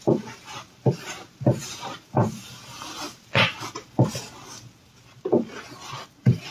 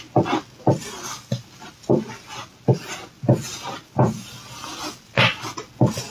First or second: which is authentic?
second